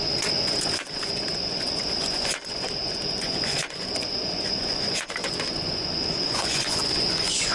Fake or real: fake